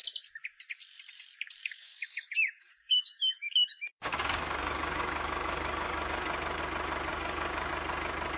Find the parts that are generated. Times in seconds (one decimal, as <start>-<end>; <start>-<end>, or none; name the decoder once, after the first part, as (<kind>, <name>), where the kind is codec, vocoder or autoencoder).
1.6-6.6 (codec, DAC); 7.1-7.7